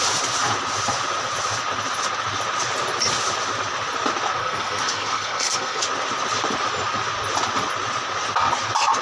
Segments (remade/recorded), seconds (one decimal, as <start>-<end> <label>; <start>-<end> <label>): 0.0-4.4 recorded; 4.4-5.8 remade; 5.8-9.0 recorded